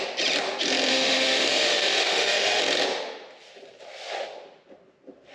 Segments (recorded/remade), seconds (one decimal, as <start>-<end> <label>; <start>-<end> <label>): 0.0-0.9 recorded; 0.9-2.6 remade; 2.6-5.3 recorded